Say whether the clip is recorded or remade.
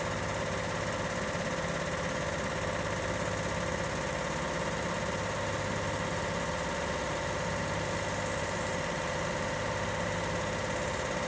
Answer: recorded